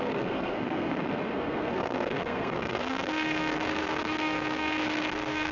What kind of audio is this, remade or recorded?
remade